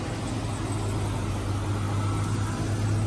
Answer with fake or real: real